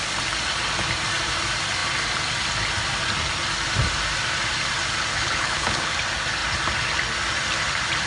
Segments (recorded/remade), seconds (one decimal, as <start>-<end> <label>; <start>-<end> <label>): 0.0-5.1 recorded; 5.1-5.9 remade; 5.9-8.1 recorded